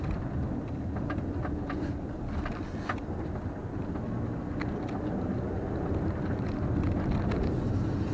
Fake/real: real